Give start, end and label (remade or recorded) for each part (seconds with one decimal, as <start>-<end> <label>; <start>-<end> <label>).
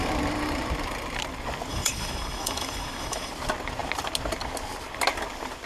0.0-1.7 recorded; 1.7-3.3 remade; 3.3-5.7 recorded